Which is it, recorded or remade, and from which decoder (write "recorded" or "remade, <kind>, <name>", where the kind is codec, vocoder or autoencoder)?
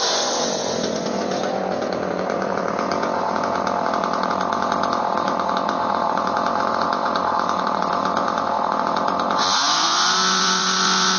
remade, vocoder, Vocos